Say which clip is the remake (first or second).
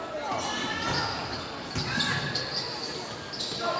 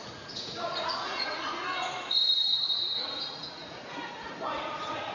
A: second